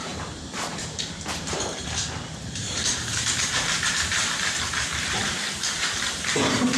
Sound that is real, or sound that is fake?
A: fake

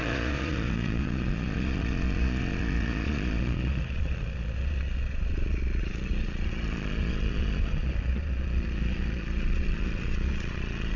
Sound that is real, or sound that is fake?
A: fake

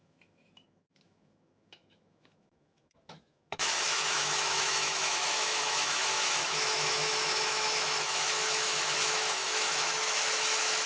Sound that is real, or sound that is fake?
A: fake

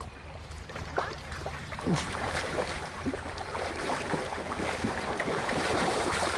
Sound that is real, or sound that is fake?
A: fake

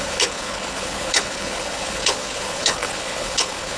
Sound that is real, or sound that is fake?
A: fake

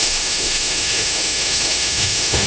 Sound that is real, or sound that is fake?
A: fake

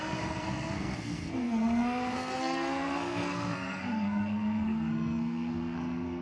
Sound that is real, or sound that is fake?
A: fake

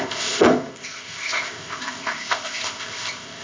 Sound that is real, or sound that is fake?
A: fake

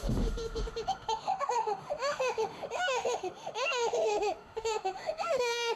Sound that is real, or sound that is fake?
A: fake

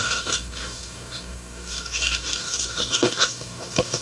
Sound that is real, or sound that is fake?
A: fake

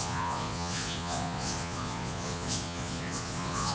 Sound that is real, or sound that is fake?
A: fake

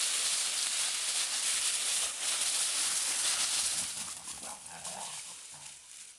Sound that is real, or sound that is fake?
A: real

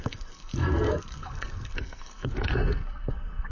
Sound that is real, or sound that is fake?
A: fake